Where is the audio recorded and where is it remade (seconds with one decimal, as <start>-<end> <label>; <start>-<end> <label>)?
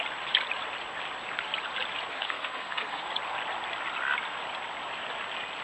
0.0-2.1 recorded; 2.1-3.1 remade; 3.1-5.6 recorded